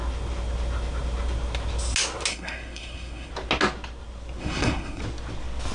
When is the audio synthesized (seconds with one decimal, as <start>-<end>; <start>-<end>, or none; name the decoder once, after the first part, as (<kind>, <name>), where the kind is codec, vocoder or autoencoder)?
2.3-3.3 (codec, SNAC); 4.4-5.0